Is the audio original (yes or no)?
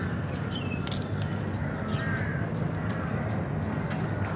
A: yes